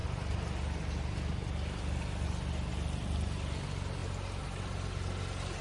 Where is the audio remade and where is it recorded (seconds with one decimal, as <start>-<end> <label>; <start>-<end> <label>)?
0.0-5.6 recorded